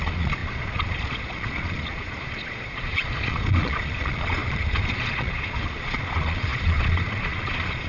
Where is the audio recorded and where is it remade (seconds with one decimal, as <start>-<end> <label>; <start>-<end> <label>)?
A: 0.0-7.9 remade